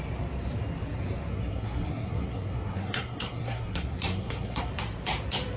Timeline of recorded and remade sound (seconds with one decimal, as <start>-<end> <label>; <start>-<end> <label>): 0.0-1.3 recorded; 1.3-4.7 remade; 4.7-5.6 recorded